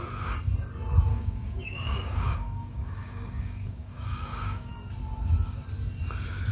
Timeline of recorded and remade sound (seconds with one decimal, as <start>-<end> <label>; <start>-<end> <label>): 0.0-1.1 recorded; 1.1-4.7 remade; 4.7-6.5 recorded